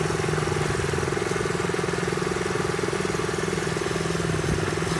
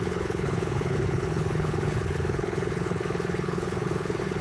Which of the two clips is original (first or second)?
first